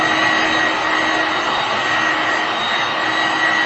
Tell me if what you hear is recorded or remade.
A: recorded